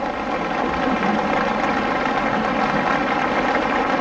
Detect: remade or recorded recorded